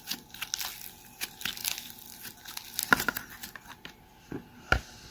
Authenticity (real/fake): real